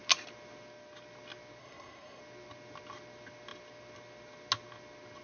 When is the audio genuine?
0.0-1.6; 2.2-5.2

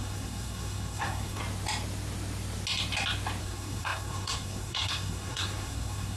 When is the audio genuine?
1.4-3.4